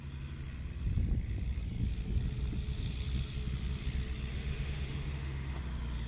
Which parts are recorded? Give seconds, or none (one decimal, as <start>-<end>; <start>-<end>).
0.0-4.3; 5.6-6.1